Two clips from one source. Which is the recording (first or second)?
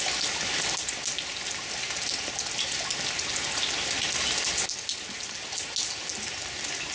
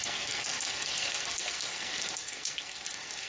first